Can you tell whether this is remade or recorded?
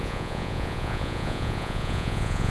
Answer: remade